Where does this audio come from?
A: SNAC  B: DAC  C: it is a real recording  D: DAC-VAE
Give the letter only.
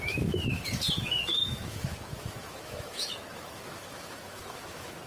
D